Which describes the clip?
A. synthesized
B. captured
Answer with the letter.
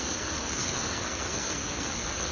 A